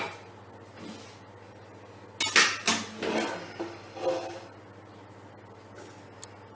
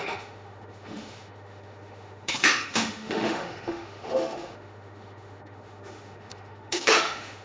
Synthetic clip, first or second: second